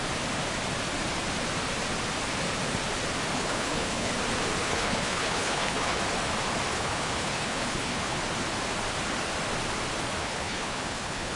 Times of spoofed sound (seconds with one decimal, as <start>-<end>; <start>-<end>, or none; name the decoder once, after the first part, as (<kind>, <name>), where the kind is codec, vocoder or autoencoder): 3.3-4.1 (codec, HILCodec); 4.6-6.0; 6.7-8.2; 10.2-11.4